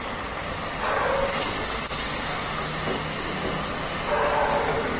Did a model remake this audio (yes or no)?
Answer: no